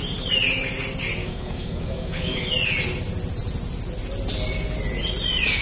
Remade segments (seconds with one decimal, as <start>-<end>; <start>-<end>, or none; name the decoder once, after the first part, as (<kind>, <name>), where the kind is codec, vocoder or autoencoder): 1.2-2.5 (codec, DAC)